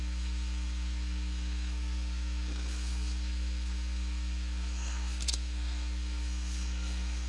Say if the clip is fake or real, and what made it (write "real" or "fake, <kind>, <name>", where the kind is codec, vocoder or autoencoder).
fake, codec, SNAC